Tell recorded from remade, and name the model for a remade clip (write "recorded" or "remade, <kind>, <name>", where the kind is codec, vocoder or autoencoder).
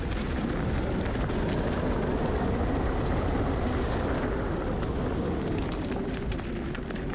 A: recorded